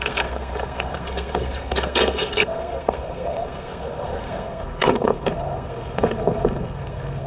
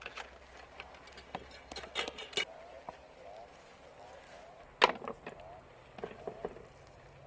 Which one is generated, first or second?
first